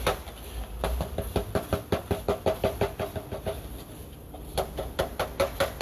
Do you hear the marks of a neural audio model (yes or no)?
no